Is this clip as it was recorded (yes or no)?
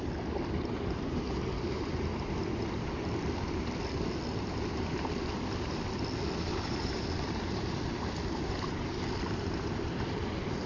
yes